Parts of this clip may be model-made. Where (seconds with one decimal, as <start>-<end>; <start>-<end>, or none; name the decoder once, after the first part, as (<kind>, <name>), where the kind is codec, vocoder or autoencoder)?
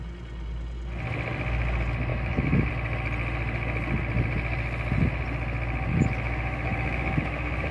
2.1-2.7 (autoencoder, DAC-VAE); 5.9-7.7